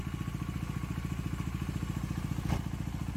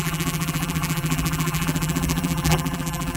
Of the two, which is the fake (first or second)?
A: second